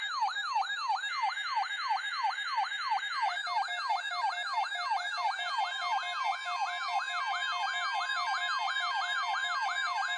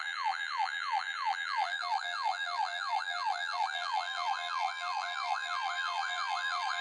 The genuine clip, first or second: first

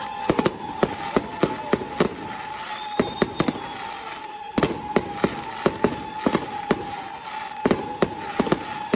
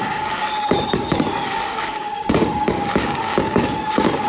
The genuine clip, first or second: first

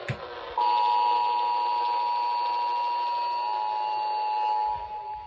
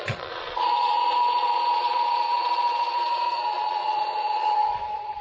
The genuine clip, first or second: first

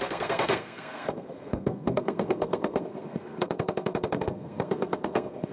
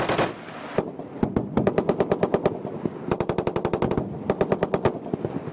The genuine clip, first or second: second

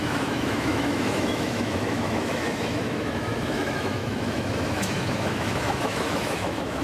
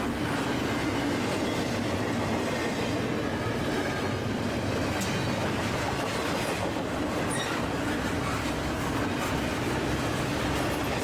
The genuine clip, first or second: second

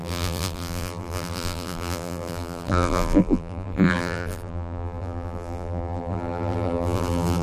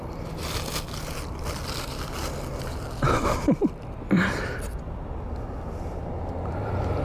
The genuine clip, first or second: second